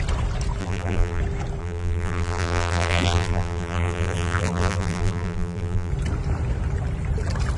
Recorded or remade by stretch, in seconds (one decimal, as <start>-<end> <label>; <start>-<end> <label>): 0.0-0.6 recorded; 0.6-1.2 remade; 1.2-1.6 recorded; 1.6-5.9 remade; 5.9-7.6 recorded